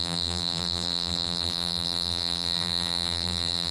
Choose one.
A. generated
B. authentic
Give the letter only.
A